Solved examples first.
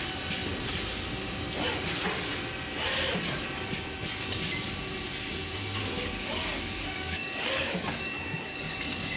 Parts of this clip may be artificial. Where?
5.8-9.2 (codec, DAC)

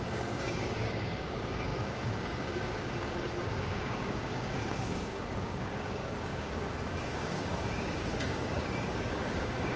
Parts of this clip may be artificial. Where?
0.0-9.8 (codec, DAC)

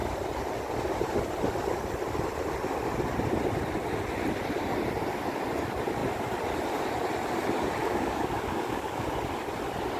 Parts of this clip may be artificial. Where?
7.8-9.1 (codec, DAC)